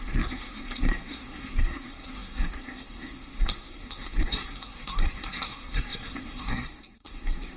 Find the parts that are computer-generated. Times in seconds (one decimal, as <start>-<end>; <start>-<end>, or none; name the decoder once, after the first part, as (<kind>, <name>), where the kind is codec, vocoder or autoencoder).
0.0-7.6 (codec, SNAC)